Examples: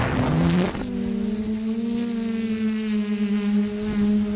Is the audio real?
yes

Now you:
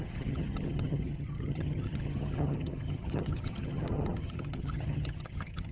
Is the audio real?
no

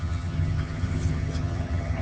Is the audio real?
no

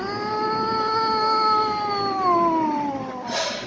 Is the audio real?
yes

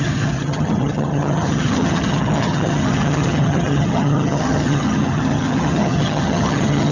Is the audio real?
no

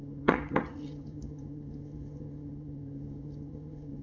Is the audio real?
no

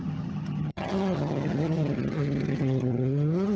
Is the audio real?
no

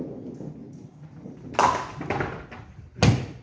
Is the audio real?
yes